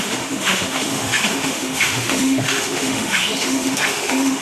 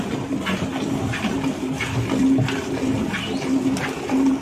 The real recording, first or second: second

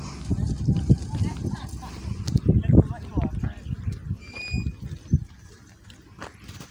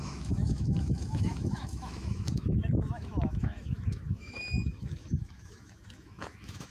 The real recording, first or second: first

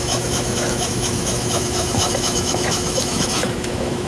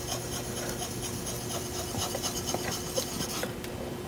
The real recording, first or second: second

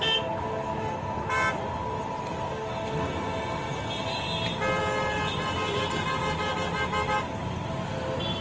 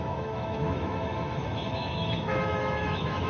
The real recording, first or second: first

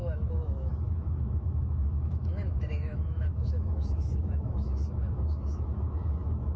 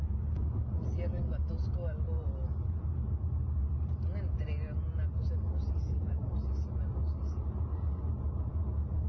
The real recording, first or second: second